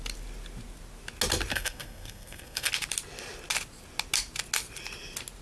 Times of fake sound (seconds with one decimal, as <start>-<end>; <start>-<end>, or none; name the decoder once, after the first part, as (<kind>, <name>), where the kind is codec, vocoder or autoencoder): 1.5-2.7 (codec, SNAC)